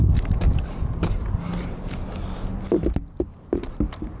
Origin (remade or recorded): recorded